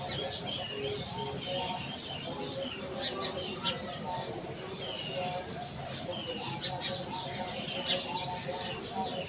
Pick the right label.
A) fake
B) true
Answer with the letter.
B